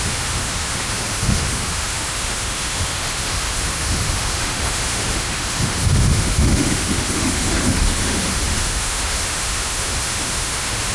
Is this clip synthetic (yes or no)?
yes